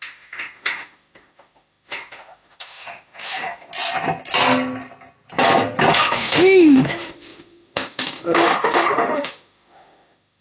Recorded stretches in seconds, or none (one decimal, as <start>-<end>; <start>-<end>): 3.7-5.9